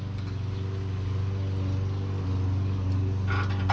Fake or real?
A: real